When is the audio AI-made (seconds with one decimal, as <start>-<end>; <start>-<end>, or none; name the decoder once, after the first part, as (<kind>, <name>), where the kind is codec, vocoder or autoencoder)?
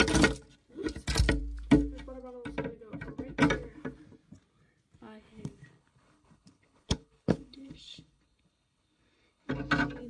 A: 5.3-9.5 (codec, HILCodec)